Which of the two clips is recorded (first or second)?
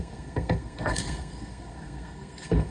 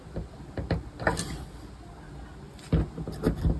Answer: second